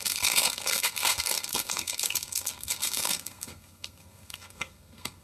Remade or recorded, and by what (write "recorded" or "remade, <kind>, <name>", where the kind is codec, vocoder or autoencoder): remade, codec, SNAC